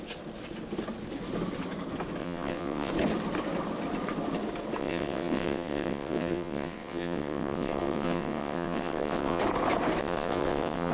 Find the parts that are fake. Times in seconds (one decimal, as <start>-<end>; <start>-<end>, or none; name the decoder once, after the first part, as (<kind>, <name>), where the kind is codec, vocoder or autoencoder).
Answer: 2.2-2.9 (vocoder, WaveNeXt); 4.8-9.4; 10.0-10.9